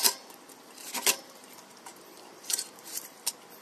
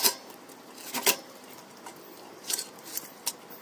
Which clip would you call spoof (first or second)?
first